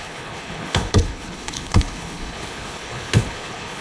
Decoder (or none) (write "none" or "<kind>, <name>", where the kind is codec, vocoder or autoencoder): codec, HILCodec